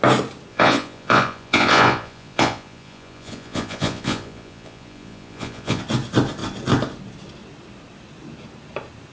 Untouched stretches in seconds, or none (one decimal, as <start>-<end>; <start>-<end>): 0.0-0.5; 5.8-9.1